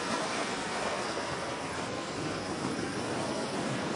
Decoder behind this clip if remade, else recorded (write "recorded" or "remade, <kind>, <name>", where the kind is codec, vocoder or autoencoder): remade, codec, SNAC